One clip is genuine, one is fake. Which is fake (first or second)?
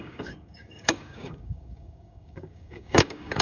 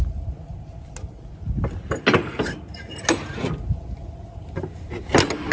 first